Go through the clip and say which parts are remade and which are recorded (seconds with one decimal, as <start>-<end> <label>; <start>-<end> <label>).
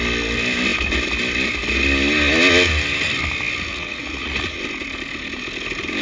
0.0-3.7 recorded; 3.7-4.6 remade; 4.6-6.0 recorded